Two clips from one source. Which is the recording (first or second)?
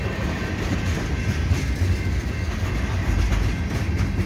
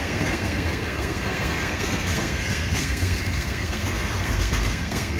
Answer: first